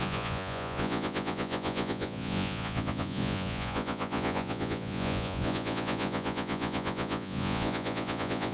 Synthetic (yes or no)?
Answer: yes